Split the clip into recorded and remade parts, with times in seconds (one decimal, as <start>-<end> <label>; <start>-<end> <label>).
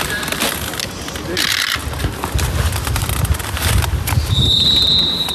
0.0-5.3 recorded